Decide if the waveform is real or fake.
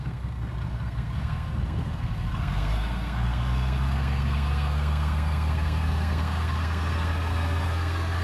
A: fake